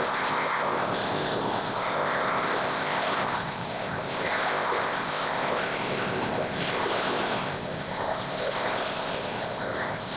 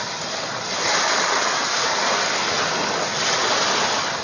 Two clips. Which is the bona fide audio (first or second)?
second